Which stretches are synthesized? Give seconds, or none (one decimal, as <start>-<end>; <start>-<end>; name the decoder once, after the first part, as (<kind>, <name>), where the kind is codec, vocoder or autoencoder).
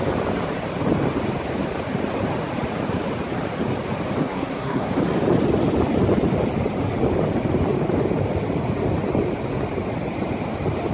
4.2-4.9 (codec, SNAC)